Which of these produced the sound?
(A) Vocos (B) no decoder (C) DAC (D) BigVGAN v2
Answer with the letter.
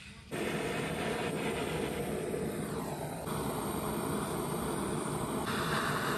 D